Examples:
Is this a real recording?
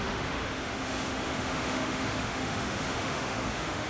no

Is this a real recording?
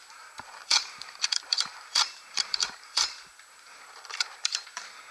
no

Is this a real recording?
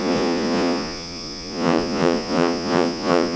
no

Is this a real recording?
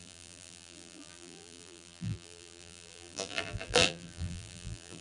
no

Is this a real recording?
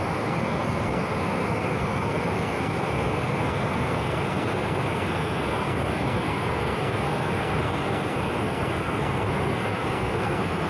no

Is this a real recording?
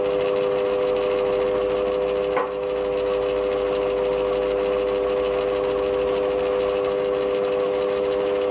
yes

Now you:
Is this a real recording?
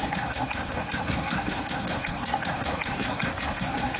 no